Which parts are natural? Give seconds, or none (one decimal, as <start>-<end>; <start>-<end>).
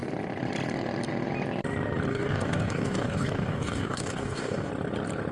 0.0-2.1; 4.7-5.3